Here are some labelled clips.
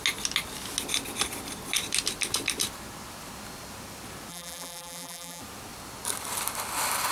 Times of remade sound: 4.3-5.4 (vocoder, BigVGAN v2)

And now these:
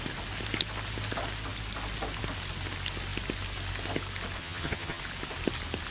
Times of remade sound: 4.4-5.0 (vocoder, HiFi-GAN)

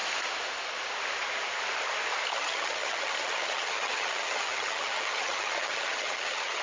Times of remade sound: 2.3-6.6 (vocoder, HiFi-GAN)

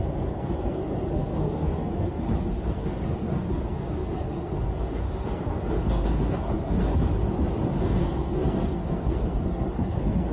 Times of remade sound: 0.0-7.1 (codec, SNAC); 7.8-10.3

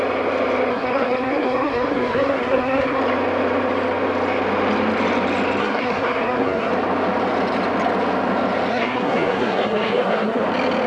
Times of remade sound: 0.7-3.0 (codec, SNAC); 5.6-6.7; 8.7-10.4

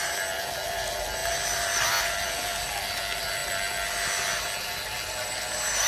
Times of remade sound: none

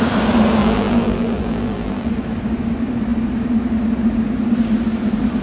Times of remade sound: 0.6-2.1 (vocoder, BigVGAN v2)